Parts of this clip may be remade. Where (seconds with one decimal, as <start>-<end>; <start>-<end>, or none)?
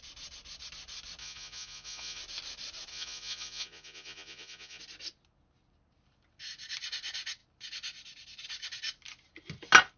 1.2-2.2; 2.9-4.8